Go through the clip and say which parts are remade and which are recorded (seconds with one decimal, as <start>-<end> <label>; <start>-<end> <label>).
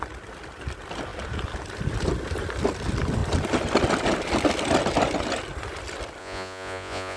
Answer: 0.0-6.2 recorded; 6.2-7.2 remade